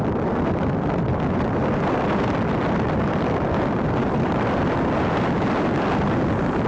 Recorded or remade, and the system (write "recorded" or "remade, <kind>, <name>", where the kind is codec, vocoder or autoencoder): remade, vocoder, BigVGAN v2